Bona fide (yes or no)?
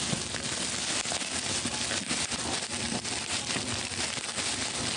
yes